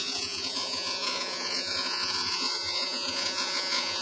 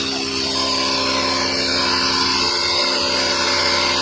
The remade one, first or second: first